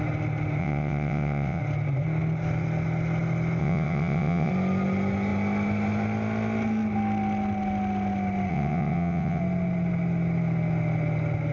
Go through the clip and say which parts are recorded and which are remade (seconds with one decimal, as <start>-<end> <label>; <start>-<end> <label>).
0.0-0.6 recorded; 0.6-1.6 remade; 1.6-3.6 recorded; 3.6-4.5 remade; 4.5-8.5 recorded; 8.5-9.4 remade; 9.4-11.5 recorded